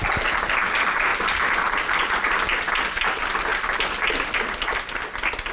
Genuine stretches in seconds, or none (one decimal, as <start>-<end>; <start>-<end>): 0.0-5.5